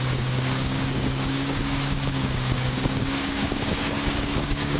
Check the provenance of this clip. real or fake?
fake